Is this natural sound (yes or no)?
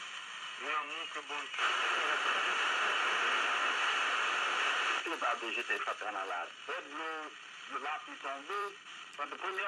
no